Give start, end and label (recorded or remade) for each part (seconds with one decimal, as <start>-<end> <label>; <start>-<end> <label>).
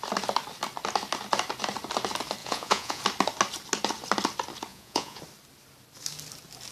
0.0-2.4 recorded; 2.4-3.0 remade; 3.0-4.7 recorded; 4.7-5.2 remade; 5.2-6.7 recorded